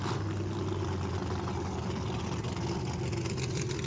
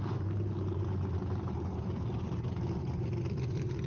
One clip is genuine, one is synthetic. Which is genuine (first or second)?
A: first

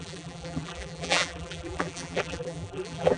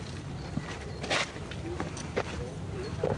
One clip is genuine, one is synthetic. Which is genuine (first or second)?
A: second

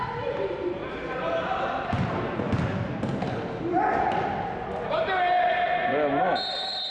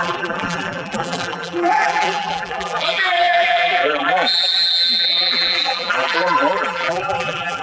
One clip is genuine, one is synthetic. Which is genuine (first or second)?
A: first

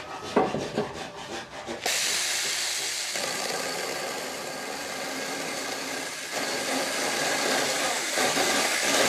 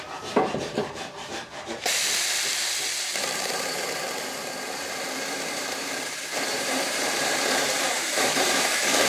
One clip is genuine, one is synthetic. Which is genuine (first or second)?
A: first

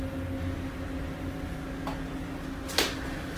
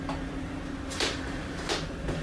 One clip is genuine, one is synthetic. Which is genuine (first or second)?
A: first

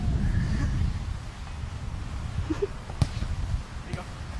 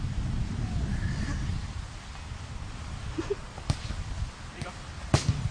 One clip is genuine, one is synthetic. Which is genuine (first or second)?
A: first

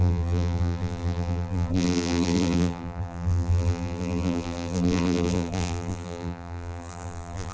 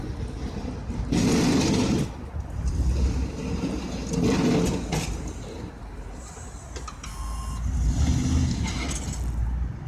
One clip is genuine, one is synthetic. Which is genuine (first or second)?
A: second